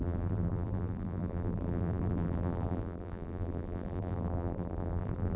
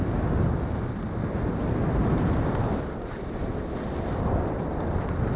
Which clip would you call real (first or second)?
second